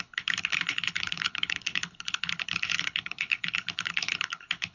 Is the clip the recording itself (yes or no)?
no